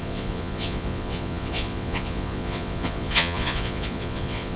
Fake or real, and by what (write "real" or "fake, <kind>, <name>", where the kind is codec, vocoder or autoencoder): fake, vocoder, Vocos